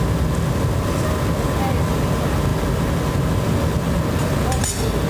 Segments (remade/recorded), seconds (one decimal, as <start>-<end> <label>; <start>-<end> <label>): 0.0-5.1 recorded